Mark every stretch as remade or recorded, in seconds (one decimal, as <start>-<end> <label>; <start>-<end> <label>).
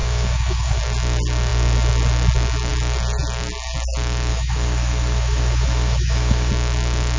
0.0-0.8 remade; 0.8-4.3 recorded; 4.3-6.5 remade; 6.5-7.2 recorded